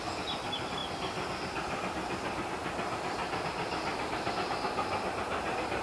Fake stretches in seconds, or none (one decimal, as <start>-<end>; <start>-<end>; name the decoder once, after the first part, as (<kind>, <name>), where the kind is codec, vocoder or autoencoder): none